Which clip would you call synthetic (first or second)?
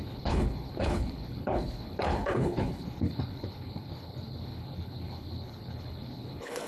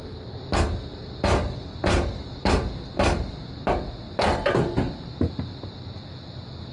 first